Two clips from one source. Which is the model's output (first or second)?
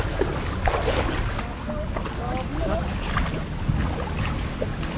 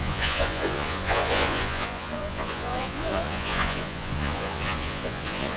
second